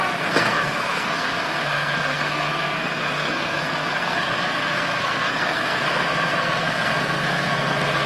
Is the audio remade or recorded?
remade